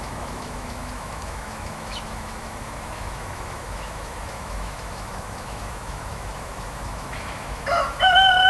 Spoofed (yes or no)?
yes